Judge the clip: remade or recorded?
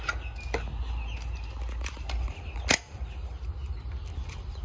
recorded